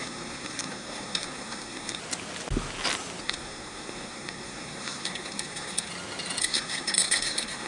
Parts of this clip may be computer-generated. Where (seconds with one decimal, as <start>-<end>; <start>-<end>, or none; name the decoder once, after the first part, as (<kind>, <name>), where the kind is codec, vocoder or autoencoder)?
0.0-2.0 (codec, SNAC); 3.2-5.9; 6.4-7.7